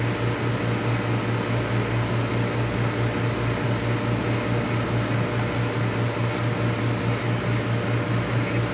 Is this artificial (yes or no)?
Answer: no